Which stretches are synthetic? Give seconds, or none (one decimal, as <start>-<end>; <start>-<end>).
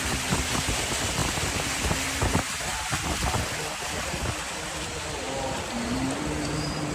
none